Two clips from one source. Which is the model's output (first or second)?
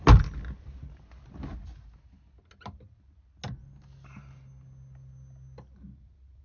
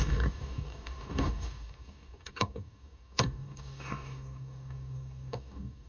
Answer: second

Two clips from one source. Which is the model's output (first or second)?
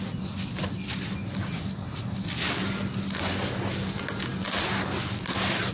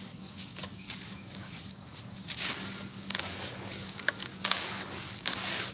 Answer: second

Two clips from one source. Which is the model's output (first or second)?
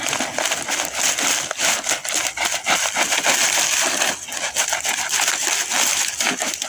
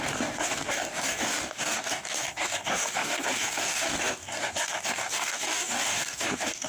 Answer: second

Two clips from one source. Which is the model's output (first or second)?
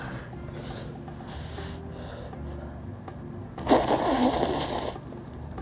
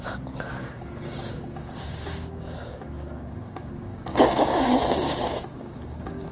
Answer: second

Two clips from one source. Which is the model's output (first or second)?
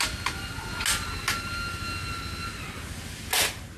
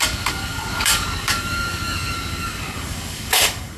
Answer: second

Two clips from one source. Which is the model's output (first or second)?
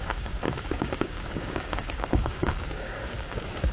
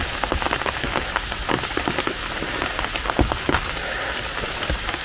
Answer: first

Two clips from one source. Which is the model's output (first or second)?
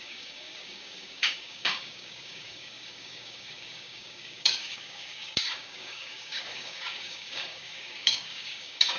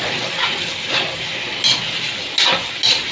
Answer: first